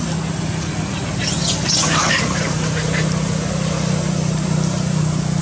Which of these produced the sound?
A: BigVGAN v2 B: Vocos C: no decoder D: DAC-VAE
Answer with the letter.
C